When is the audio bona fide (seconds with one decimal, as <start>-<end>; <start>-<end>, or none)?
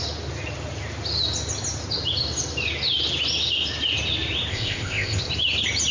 0.0-4.5; 5.2-5.9